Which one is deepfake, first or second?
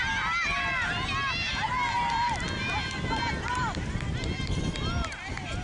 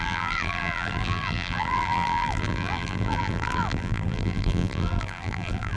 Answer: second